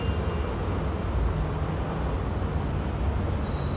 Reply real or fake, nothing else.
real